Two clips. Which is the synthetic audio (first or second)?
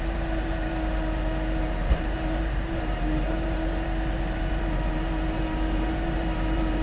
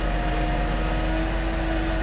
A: first